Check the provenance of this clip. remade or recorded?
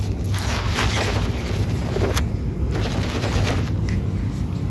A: recorded